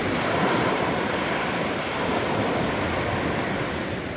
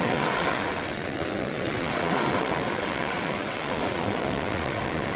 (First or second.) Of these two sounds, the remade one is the second